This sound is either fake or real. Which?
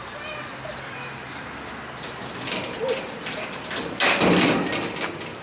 real